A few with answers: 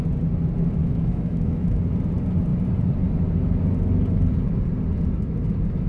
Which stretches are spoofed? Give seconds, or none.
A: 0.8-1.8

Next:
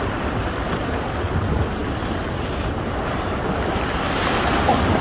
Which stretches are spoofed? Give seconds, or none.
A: none

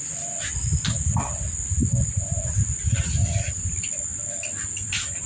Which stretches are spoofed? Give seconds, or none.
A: none

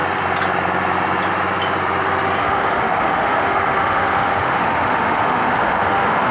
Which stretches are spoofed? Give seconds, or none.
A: 2.4-6.3

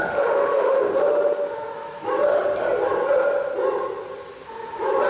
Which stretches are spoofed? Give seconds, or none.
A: 0.0-1.7

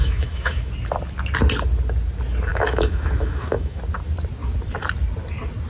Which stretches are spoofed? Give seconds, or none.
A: 0.0-0.7; 2.5-3.8

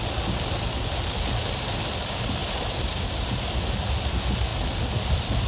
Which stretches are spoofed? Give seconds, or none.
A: none

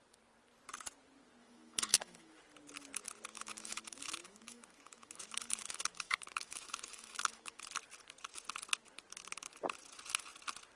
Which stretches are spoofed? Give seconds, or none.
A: 1.4-2.4; 3.3-7.6